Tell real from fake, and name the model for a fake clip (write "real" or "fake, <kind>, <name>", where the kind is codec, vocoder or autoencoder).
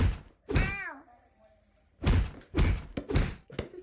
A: real